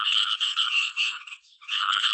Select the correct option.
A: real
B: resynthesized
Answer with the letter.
B